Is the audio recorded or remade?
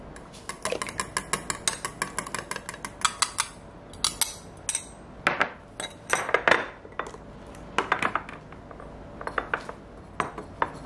recorded